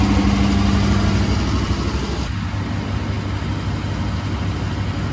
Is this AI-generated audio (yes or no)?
no